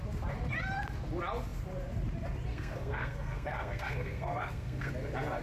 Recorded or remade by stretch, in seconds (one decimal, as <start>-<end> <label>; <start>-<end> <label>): 0.0-2.5 recorded; 2.5-4.9 remade; 4.9-5.4 recorded